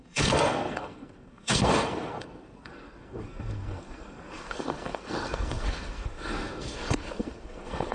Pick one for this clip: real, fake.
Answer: fake